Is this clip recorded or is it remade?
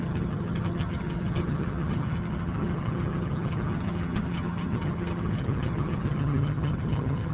remade